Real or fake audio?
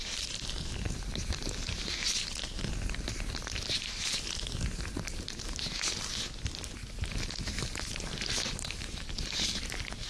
real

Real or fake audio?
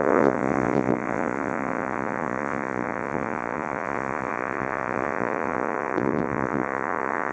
fake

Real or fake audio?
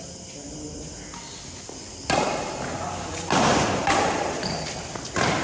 real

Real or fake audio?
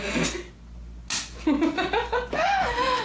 real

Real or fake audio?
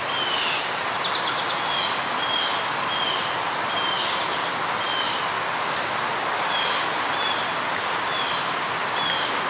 real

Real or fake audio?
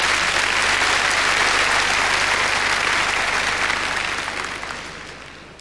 real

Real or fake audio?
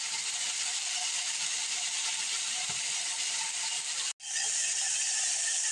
real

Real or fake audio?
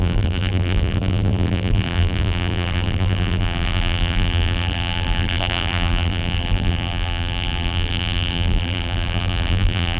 fake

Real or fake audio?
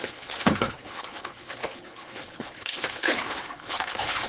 fake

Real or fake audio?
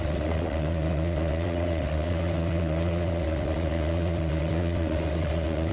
fake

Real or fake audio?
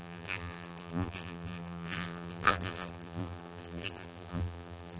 fake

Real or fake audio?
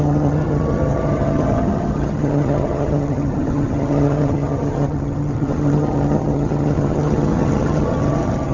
fake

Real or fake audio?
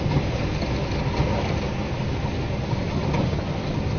real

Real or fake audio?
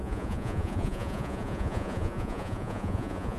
fake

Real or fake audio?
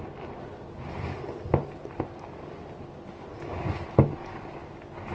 real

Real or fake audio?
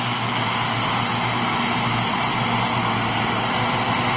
real